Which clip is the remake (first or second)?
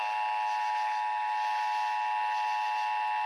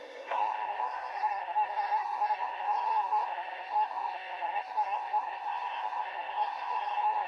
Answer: second